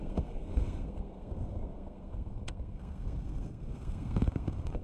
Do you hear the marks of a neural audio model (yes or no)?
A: yes